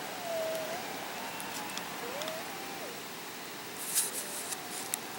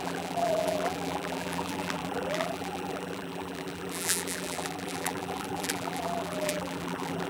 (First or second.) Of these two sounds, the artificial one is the second